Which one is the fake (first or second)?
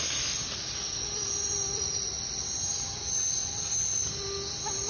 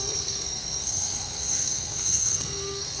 second